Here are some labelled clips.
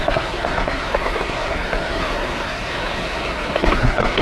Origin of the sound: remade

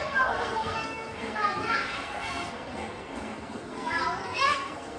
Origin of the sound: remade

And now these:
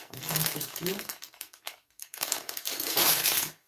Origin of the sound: remade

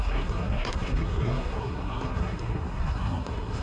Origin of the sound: remade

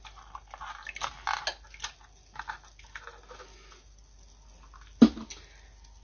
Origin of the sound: recorded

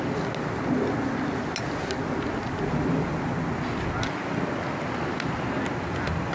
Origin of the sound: recorded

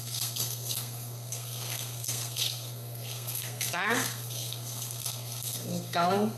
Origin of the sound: remade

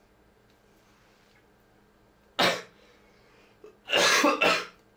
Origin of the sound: recorded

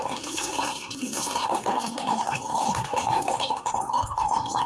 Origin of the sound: remade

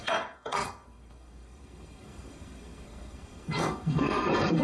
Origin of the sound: remade